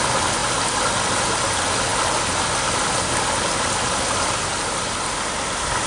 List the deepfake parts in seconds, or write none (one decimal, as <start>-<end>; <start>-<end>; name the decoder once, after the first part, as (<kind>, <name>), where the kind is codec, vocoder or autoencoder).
none